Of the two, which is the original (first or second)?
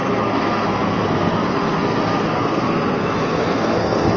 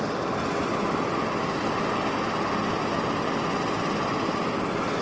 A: second